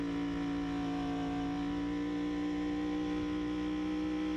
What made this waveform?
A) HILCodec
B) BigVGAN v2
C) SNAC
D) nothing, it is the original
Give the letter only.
D